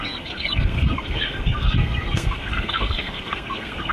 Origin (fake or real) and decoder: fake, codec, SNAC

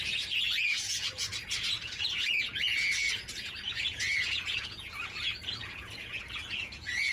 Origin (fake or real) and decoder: fake, vocoder, Vocos